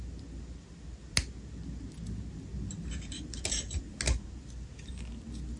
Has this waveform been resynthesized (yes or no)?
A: no